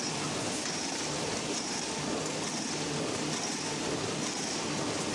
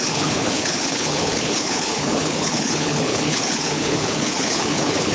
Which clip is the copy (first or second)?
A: second